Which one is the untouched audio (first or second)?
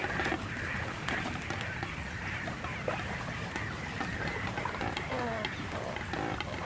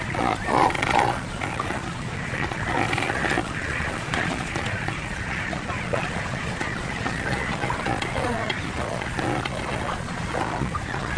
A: first